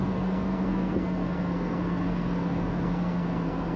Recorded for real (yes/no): no